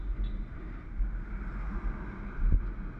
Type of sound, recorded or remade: recorded